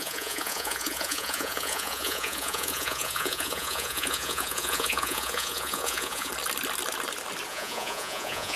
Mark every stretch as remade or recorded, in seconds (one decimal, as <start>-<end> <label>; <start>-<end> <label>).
0.0-6.3 remade; 6.3-7.5 recorded; 7.5-8.6 remade